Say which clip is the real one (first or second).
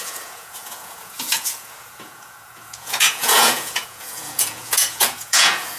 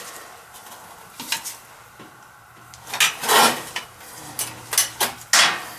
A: second